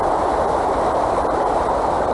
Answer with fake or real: real